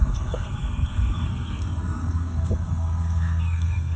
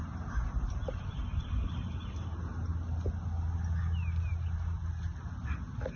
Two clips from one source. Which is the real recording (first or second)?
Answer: second